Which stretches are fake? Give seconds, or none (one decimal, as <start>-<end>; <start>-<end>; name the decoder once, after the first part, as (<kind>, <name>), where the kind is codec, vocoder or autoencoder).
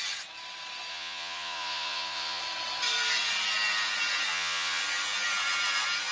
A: 0.9-2.4 (vocoder, Vocos); 4.3-4.8